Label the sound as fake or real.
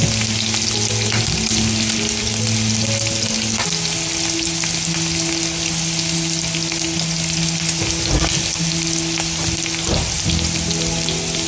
real